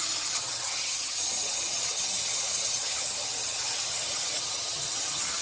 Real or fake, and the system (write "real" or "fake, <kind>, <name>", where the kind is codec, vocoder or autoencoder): fake, vocoder, HiFi-GAN